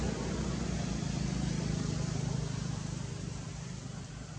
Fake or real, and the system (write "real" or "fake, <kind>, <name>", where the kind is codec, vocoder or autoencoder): real